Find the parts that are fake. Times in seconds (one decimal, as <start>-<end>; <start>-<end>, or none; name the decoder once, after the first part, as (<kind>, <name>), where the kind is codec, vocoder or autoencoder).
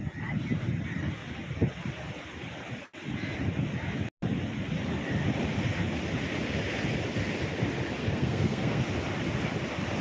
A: 8.0-8.8 (codec, SNAC)